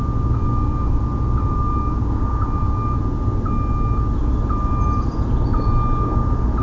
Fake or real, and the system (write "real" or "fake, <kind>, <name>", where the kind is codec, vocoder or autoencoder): real